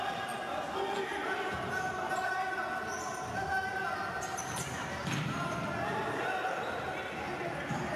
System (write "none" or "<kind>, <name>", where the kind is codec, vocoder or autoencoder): none